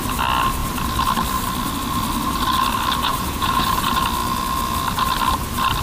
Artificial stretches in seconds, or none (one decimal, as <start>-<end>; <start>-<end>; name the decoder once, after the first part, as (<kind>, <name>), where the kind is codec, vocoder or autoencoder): 3.1-3.8 (vocoder, Vocos)